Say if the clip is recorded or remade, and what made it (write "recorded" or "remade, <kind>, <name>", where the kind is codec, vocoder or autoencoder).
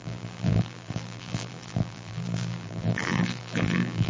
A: remade, vocoder, BigVGAN v2